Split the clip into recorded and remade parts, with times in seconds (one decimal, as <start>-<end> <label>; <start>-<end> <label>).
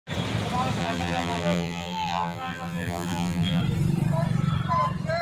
0.0-0.8 recorded; 0.8-3.6 remade; 3.6-5.2 recorded